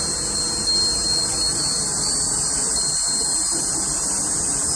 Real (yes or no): yes